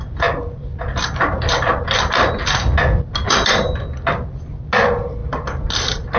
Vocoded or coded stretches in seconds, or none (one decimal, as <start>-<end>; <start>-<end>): none